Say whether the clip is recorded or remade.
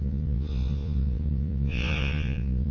remade